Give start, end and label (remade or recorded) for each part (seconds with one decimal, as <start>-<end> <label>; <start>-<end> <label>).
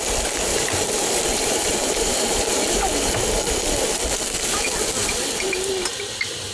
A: 0.0-0.5 recorded; 0.5-2.8 remade; 2.8-5.0 recorded; 5.0-5.7 remade; 5.7-6.5 recorded